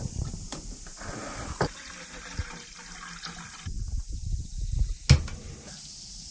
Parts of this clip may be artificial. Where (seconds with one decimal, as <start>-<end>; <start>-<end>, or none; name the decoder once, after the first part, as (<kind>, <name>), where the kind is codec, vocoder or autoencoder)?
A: none